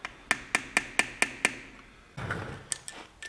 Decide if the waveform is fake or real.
real